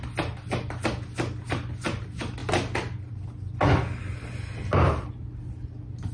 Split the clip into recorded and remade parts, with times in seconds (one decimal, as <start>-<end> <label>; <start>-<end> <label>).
0.0-6.1 recorded